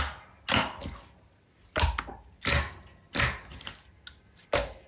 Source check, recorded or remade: recorded